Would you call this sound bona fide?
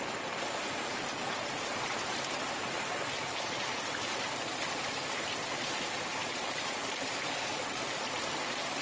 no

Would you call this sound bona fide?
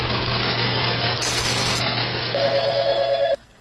no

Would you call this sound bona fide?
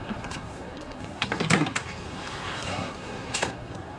no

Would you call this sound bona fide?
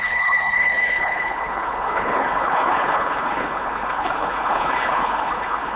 no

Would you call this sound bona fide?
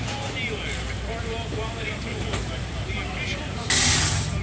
yes